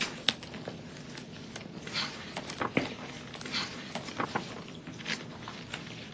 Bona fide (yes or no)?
yes